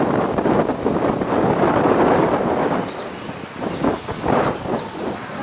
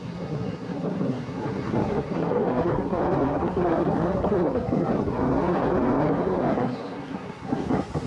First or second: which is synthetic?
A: second